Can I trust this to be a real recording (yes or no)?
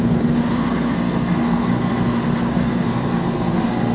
no